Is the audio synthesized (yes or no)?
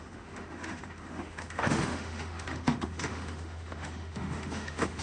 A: yes